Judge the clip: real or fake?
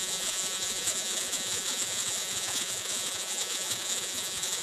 fake